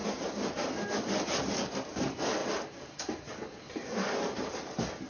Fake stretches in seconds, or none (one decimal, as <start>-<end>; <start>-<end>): none